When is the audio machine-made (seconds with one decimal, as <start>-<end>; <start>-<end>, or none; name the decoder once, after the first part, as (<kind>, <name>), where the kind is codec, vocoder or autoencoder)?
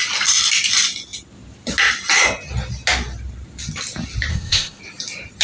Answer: 4.3-4.8 (codec, ZipCodec)